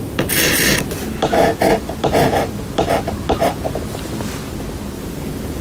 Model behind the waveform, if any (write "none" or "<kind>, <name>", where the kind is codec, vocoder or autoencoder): none